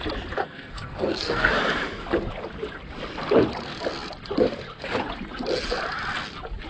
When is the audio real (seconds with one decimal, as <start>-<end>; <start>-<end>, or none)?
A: 0.0-0.4; 1.5-6.7